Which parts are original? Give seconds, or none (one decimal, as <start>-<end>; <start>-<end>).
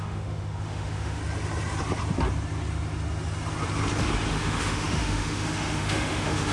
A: 1.2-4.3